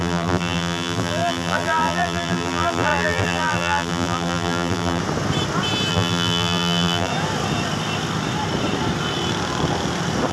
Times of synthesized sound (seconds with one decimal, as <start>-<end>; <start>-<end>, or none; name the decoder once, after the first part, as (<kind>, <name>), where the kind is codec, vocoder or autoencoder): 0.0-5.0 (vocoder, BigVGAN v2); 5.9-7.1